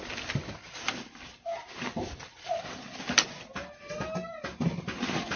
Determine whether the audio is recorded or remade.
recorded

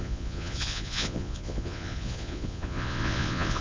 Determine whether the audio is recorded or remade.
remade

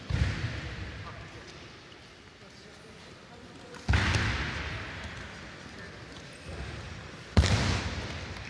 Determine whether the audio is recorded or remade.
recorded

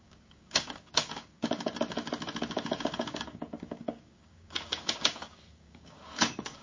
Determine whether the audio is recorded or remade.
remade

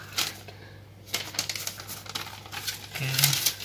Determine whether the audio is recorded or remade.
recorded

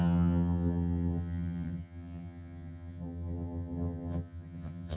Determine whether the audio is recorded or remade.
remade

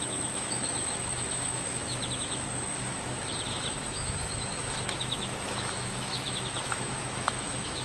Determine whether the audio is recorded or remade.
remade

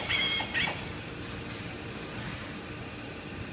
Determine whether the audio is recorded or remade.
recorded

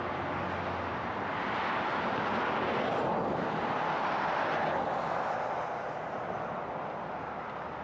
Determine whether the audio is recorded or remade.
recorded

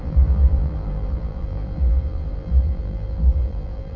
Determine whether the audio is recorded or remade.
remade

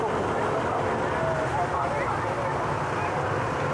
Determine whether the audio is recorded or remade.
recorded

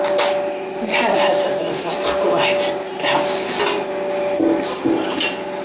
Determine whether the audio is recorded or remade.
recorded